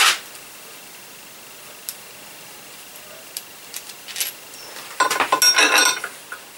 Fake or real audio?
real